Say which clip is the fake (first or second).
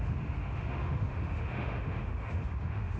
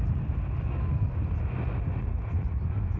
first